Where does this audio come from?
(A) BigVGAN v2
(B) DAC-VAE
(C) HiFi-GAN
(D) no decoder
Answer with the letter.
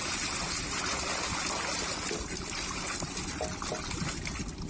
D